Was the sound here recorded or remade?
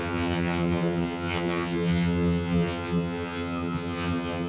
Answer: remade